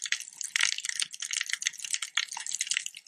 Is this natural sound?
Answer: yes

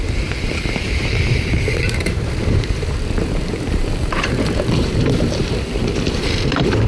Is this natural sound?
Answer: no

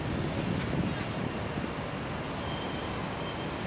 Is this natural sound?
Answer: yes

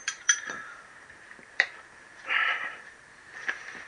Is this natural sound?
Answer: no